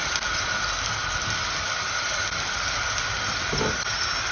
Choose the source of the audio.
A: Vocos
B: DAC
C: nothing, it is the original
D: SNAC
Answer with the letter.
C